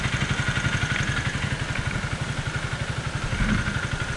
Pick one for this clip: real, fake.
real